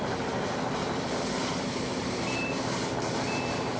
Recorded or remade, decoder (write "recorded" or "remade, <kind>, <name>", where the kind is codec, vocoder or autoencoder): remade, vocoder, BigVGAN v2